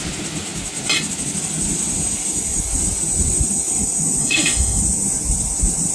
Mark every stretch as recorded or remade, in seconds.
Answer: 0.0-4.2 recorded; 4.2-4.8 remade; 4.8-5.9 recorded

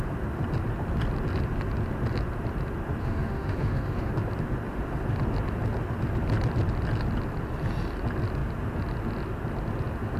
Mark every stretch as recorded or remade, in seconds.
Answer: 0.0-3.0 recorded; 3.0-4.1 remade; 4.1-10.2 recorded

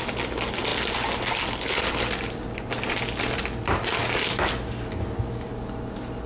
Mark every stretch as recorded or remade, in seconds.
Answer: 0.0-6.3 recorded

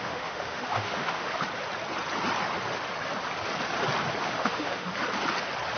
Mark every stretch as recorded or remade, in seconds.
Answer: 0.0-1.3 remade; 1.3-4.2 recorded; 4.2-4.9 remade; 4.9-5.8 recorded

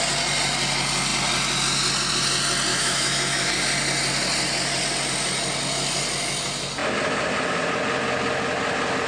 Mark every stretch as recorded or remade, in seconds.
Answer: 0.0-2.7 recorded; 2.7-3.5 remade; 3.5-9.1 recorded

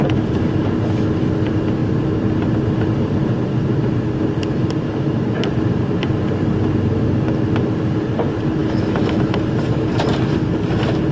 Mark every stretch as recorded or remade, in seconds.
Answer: 0.0-8.6 recorded; 8.6-9.3 remade; 9.3-11.1 recorded

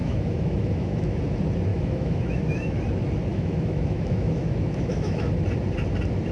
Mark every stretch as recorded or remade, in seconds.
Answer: 0.0-1.2 remade; 1.2-1.7 recorded; 1.7-2.8 remade; 2.8-3.3 recorded; 3.3-5.3 remade; 5.3-6.3 recorded

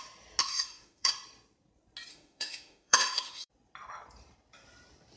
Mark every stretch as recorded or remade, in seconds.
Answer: 0.0-0.4 recorded; 0.4-1.1 remade; 1.1-2.1 recorded; 2.1-3.5 remade; 3.5-5.2 recorded